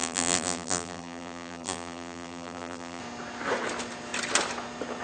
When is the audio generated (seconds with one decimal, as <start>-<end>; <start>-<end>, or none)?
0.0-3.0